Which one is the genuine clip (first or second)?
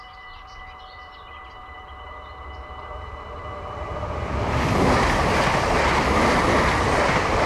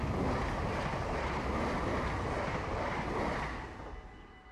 second